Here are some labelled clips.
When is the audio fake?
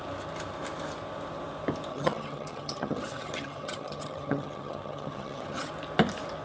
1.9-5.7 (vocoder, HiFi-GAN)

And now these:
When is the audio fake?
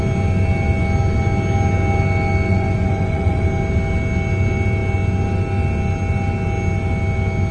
2.5-3.4 (vocoder, Vocos)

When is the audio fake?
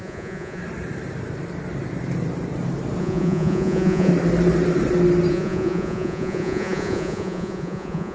0.0-0.6 (vocoder, Vocos); 3.0-4.1; 5.3-8.1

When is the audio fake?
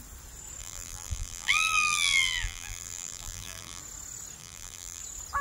0.6-3.8 (vocoder, BigVGAN v2); 4.4-5.0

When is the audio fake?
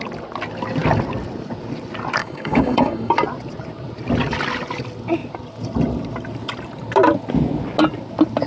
2.2-3.1 (codec, DAC)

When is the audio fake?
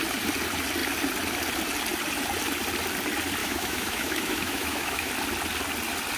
3.4-5.1 (autoencoder, DAC-VAE)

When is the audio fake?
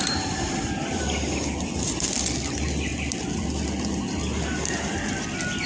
none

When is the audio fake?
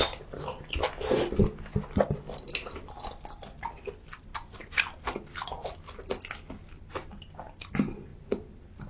8.1-8.9 (vocoder, BigVGAN v2)